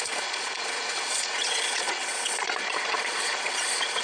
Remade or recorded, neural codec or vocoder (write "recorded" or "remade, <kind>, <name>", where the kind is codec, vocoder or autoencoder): remade, vocoder, Vocos